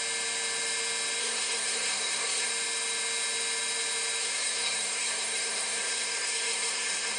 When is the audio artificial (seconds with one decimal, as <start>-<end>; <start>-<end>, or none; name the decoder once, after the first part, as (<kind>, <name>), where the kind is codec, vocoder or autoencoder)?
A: 1.2-2.5 (codec, SNAC); 4.2-7.2